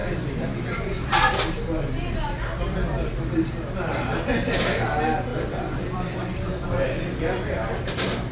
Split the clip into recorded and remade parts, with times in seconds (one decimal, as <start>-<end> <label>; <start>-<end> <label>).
0.0-1.3 remade; 1.3-2.5 recorded; 2.5-3.1 remade; 3.1-5.3 recorded; 5.3-7.7 remade; 7.7-8.3 recorded